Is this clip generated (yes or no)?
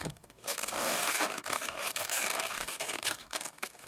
yes